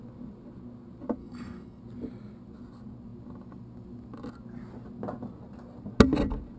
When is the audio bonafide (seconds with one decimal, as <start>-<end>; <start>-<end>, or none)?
0.0-1.2; 1.8-6.6